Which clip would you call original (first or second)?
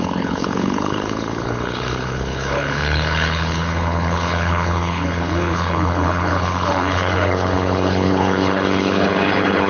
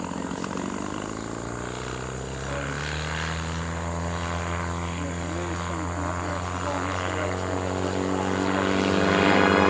second